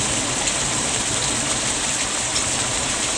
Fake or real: real